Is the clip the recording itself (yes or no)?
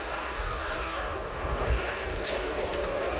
no